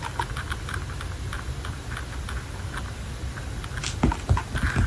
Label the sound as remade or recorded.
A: recorded